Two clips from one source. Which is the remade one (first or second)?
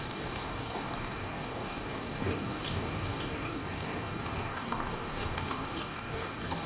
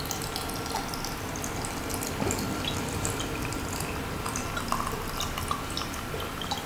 first